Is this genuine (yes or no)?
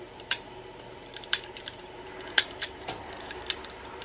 no